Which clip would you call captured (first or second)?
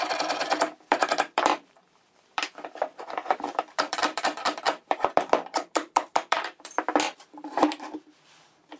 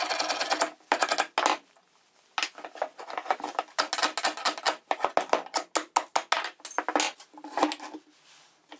second